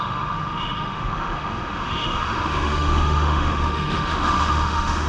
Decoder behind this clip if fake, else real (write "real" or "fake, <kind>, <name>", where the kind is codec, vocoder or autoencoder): fake, autoencoder, DAC-VAE